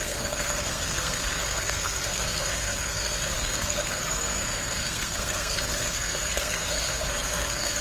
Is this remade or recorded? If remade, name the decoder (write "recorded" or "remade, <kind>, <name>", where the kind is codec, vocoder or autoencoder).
remade, codec, SNAC